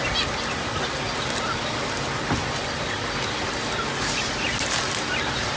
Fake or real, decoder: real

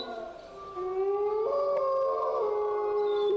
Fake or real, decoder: real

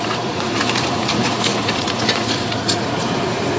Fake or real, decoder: fake, vocoder, Vocos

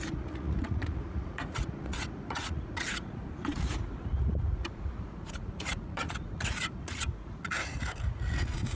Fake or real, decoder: fake, vocoder, Vocos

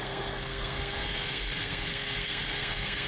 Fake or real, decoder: fake, codec, SNAC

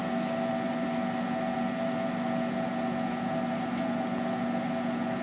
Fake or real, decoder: real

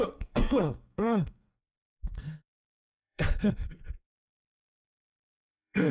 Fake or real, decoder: fake, codec, SNAC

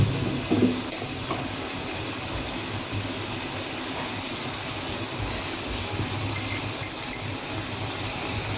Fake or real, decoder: real